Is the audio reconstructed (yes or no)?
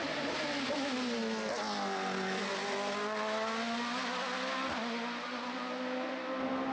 no